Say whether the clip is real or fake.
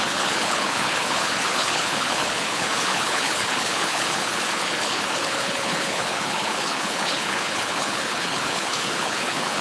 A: fake